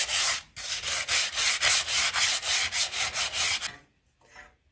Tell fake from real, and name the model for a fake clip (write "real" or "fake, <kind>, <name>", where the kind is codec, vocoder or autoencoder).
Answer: real